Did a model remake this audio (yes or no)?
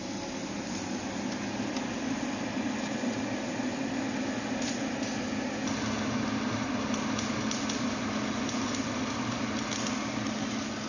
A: no